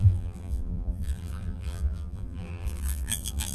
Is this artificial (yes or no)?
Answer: yes